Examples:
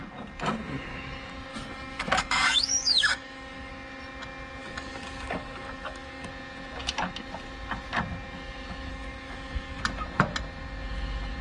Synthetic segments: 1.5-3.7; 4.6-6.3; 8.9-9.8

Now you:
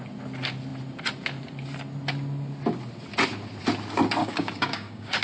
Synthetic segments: 4.2-5.2